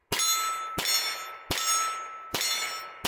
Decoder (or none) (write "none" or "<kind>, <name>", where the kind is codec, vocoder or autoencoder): none